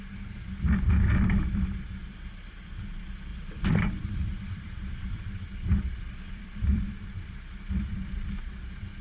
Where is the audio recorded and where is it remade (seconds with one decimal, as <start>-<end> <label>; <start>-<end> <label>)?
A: 0.0-3.3 recorded; 3.3-6.9 remade; 6.9-9.0 recorded